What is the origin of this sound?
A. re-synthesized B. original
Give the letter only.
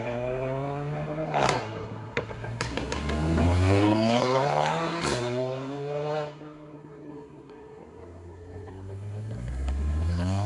A